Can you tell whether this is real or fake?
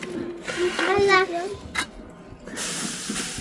real